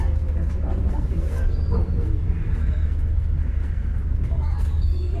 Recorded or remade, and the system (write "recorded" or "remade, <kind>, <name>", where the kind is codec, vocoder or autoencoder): remade, codec, SNAC